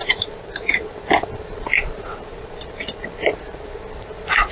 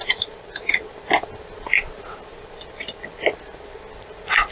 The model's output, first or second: first